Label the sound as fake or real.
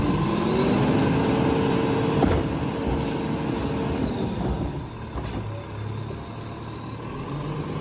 real